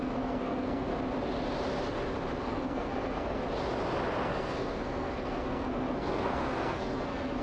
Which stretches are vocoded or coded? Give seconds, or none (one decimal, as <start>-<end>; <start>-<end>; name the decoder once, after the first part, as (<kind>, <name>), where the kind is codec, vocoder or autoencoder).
0.0-0.9 (codec, SNAC); 2.4-3.4; 4.2-7.4